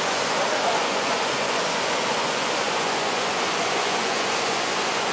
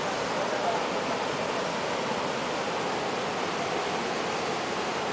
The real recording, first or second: second